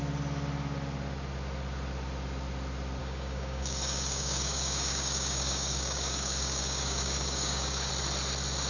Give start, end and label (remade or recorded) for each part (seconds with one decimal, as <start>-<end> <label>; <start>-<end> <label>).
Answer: 0.0-3.0 recorded; 3.0-7.9 remade; 7.9-8.7 recorded